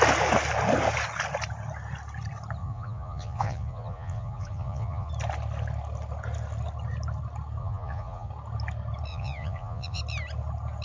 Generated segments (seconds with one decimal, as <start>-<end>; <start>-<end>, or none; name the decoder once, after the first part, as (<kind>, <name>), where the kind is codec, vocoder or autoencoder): 2.6-5.1 (vocoder, Vocos); 7.6-8.3; 9.1-10.0

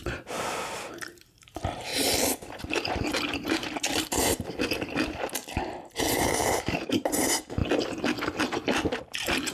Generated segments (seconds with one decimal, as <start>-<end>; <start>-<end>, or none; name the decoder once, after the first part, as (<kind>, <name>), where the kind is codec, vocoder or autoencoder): 0.0-1.9 (vocoder, BigVGAN v2); 2.6-7.6; 8.4-9.5

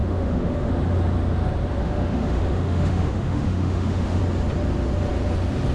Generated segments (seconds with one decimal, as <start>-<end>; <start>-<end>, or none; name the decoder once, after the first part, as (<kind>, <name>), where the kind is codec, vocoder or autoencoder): 0.0-0.7 (autoencoder, DAC-VAE); 1.8-4.2

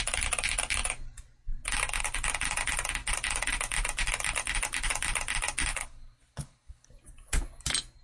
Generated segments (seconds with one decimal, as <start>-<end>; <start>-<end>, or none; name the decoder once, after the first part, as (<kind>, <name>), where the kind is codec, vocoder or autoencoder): 5.7-6.9 (codec, HILCodec)

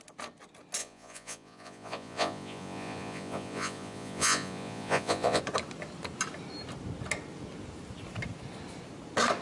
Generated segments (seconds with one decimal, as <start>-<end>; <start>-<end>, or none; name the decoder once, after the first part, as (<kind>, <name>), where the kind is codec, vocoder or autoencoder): 0.8-5.4 (vocoder, Vocos)